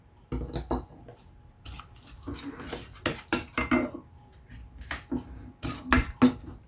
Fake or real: real